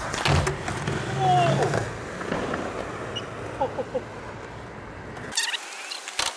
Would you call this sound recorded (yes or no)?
yes